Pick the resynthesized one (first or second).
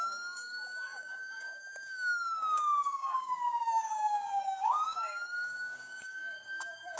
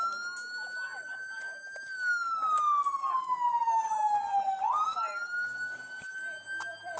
first